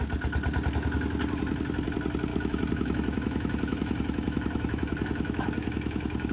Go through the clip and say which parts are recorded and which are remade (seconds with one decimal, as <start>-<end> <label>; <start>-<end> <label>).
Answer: 0.0-2.3 recorded; 2.3-6.3 remade